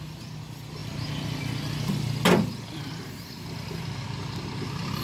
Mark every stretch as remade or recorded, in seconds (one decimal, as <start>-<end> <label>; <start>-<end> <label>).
0.0-5.0 recorded